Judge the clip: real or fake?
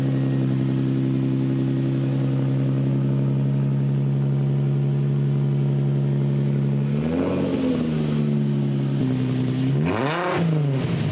real